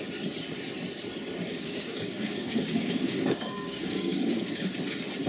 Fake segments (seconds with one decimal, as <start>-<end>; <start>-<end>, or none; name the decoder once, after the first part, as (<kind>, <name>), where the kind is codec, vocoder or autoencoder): 1.5-4.7 (codec, DAC)